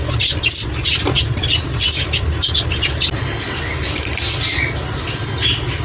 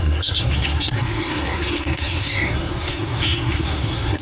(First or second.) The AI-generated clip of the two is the second